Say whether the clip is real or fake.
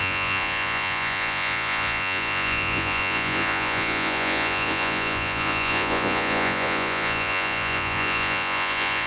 fake